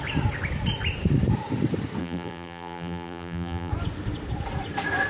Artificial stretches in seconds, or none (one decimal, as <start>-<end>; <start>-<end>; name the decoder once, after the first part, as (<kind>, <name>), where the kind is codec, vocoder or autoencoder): 2.0-3.7 (vocoder, BigVGAN v2)